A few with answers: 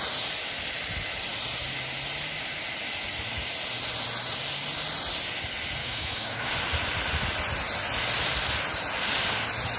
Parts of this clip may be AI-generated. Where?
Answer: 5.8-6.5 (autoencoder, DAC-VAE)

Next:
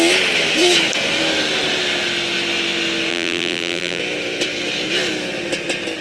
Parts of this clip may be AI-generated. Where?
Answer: 3.1-4.0 (vocoder, BigVGAN v2)

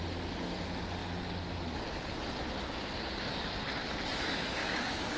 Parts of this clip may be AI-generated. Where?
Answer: 4.6-5.2 (codec, DAC)

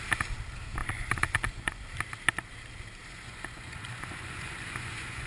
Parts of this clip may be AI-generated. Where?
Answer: 0.8-1.8 (vocoder, Vocos); 3.0-5.3

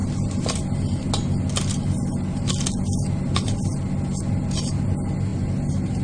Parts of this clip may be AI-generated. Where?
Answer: none

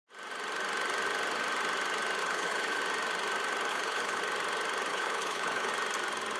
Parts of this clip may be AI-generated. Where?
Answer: 2.2-2.8 (codec, HILCodec); 3.7-4.2; 4.9-5.7